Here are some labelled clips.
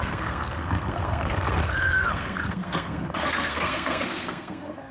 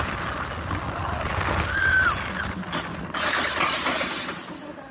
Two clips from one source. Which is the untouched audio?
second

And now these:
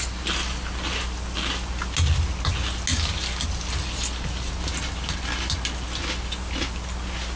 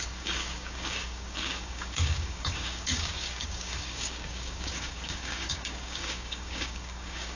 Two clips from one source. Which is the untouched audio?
first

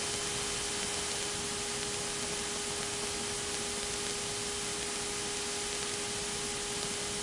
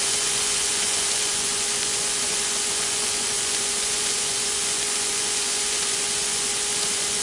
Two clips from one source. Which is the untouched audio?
first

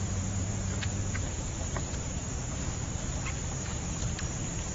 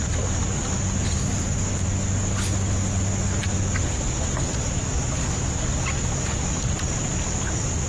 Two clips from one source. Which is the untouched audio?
second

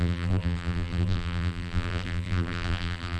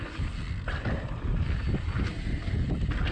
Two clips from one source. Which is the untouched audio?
second